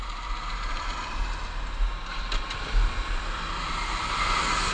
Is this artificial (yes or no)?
no